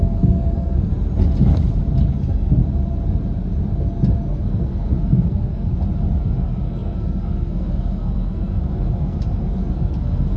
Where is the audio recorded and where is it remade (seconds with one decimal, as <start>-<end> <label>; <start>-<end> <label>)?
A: 0.0-0.9 remade; 0.9-2.1 recorded; 2.1-2.6 remade; 2.6-4.3 recorded; 4.3-5.7 remade; 5.7-6.2 recorded; 6.2-10.4 remade